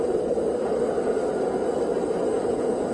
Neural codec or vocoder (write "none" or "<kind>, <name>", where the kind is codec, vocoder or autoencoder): none